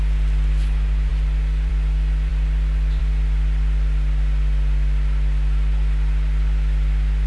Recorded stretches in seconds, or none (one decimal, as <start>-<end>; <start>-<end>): 0.0-7.3

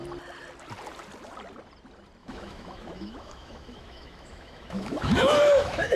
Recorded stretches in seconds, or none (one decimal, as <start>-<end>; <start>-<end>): 0.0-2.2

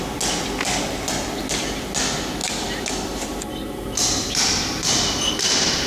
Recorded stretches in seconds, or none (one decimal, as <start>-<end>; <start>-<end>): 0.0-5.9

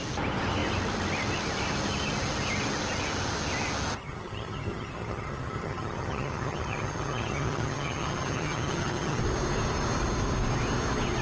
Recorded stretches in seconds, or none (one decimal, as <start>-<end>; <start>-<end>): 0.0-4.0; 9.2-11.2

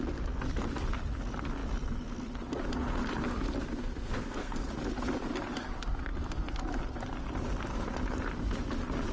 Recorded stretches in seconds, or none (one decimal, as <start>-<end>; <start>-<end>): 0.0-3.8; 4.7-9.1